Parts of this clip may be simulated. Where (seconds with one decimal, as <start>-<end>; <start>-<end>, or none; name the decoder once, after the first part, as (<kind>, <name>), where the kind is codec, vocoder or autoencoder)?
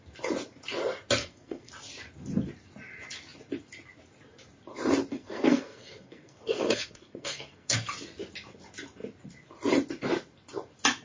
1.2-1.7 (codec, SNAC); 5.1-7.9